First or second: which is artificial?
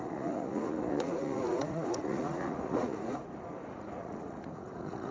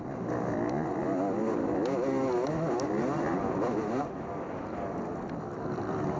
first